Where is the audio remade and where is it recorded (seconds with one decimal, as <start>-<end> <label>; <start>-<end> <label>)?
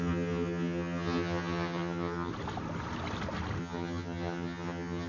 0.0-2.3 remade; 2.3-3.6 recorded; 3.6-5.1 remade